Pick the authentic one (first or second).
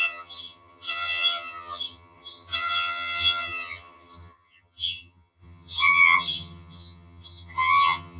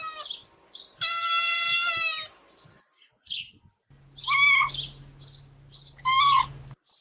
second